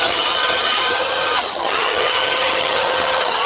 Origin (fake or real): fake